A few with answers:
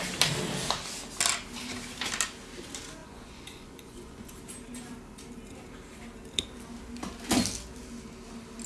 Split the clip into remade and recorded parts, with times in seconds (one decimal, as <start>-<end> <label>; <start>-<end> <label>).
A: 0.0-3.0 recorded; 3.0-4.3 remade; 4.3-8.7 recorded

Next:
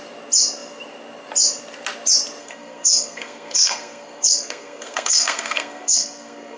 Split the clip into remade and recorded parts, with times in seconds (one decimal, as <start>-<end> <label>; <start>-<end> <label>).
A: 0.0-2.4 recorded; 2.4-6.6 remade

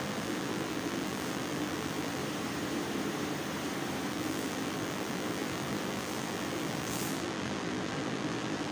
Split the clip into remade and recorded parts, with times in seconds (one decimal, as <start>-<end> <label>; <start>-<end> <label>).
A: 0.0-2.2 remade; 2.2-4.1 recorded; 4.1-8.7 remade

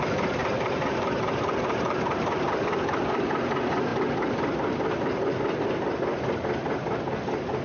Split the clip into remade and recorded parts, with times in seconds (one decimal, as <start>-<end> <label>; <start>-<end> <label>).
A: 0.0-0.4 recorded; 0.4-2.6 remade; 2.6-7.6 recorded

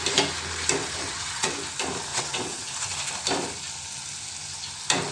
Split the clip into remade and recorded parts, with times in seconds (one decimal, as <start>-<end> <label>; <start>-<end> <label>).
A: 0.0-0.8 recorded; 0.8-1.5 remade; 1.5-2.1 recorded; 2.1-2.7 remade; 2.7-5.1 recorded

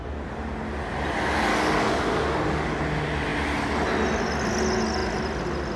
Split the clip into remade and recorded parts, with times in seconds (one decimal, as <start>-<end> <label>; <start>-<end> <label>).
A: 0.0-1.5 recorded; 1.5-2.8 remade; 2.8-5.8 recorded

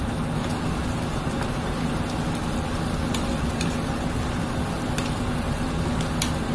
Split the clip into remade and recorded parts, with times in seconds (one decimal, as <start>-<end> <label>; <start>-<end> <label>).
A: 0.0-2.7 recorded; 2.7-5.7 remade; 5.7-6.5 recorded

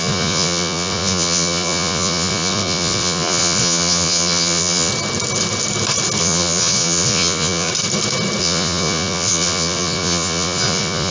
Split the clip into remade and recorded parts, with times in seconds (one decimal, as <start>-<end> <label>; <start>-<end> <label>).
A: 0.0-4.9 remade; 4.9-6.2 recorded; 6.2-7.7 remade; 7.7-8.4 recorded; 8.4-11.1 remade